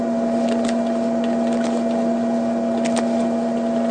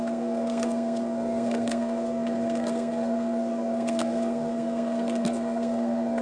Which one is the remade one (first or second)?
second